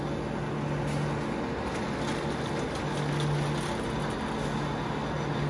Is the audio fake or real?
real